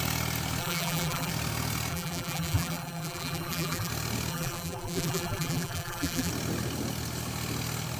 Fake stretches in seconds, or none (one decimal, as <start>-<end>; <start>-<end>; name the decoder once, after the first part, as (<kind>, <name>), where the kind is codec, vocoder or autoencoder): 0.6-1.3 (vocoder, BigVGAN v2); 1.9-3.9; 4.3-6.3